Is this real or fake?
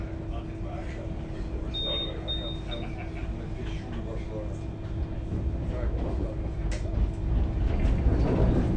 real